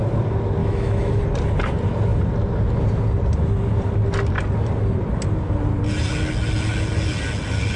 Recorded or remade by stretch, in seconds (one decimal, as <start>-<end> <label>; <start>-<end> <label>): 0.0-0.6 recorded; 0.6-1.2 remade; 1.2-7.8 recorded